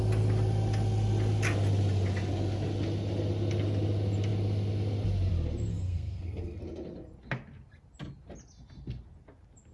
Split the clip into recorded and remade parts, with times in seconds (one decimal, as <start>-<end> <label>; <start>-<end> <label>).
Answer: 0.0-5.7 recorded; 5.7-6.6 remade; 6.6-9.7 recorded